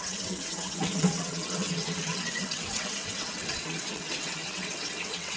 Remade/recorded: remade